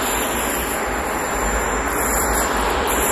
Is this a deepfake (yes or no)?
no